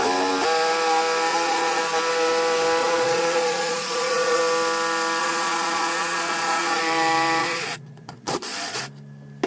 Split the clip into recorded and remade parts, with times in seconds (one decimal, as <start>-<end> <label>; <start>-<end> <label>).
0.0-1.3 recorded; 1.3-1.8 remade; 1.8-2.8 recorded; 2.8-4.4 remade; 4.4-5.2 recorded; 5.2-6.8 remade; 6.8-7.4 recorded; 7.4-8.8 remade; 8.8-9.5 recorded